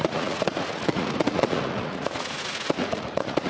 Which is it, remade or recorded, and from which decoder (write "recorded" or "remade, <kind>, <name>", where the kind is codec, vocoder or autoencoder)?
remade, vocoder, Vocos